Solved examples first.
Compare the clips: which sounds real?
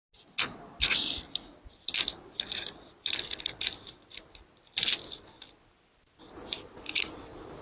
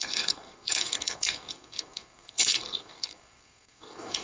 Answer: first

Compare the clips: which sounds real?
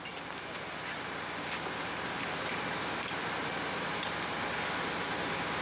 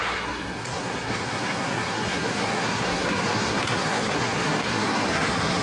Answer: first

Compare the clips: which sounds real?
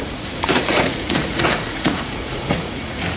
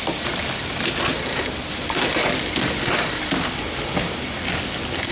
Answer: second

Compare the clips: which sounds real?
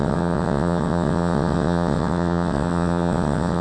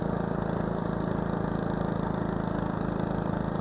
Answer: second